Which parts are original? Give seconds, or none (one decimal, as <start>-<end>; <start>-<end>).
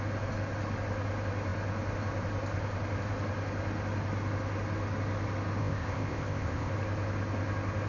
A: 0.0-5.6; 6.7-7.9